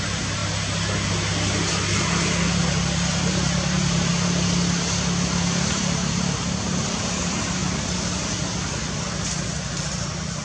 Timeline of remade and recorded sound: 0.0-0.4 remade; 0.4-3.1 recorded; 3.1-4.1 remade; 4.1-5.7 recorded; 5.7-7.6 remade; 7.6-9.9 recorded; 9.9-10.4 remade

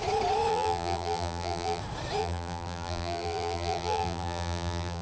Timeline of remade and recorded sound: 0.0-0.5 recorded; 0.5-1.8 remade; 1.8-2.2 recorded; 2.2-5.0 remade

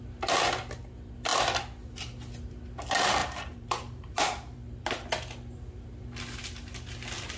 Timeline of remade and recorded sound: 0.0-3.2 recorded; 3.2-4.7 remade; 4.7-7.4 recorded

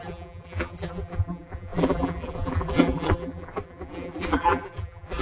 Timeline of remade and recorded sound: 0.0-5.2 remade

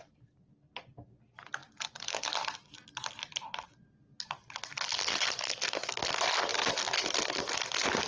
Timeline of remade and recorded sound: 0.0-6.5 recorded; 6.5-7.4 remade; 7.4-8.1 recorded

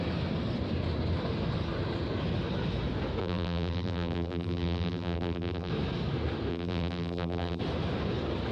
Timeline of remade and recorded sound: 0.0-3.2 recorded; 3.2-5.7 remade; 5.7-6.5 recorded; 6.5-7.6 remade; 7.6-8.5 recorded

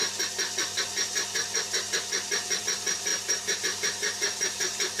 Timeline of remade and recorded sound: 0.0-2.6 recorded; 2.6-5.0 remade